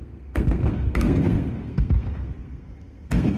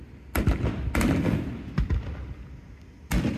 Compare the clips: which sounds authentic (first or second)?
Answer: second